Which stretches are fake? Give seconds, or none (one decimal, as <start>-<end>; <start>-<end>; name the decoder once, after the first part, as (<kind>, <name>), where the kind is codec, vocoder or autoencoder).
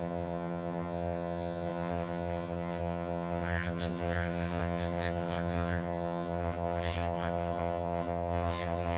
0.0-9.0 (vocoder, HiFi-GAN)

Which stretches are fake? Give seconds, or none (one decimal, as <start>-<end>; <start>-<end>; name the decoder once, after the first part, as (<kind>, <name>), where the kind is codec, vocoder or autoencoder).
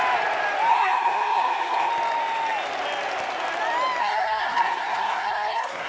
0.7-1.9 (codec, SNAC); 4.0-5.9